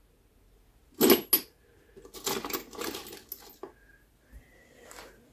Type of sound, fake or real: real